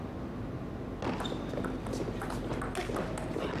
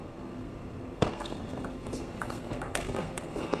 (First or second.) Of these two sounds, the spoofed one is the second